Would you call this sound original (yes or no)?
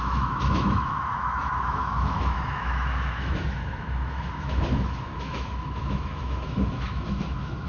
no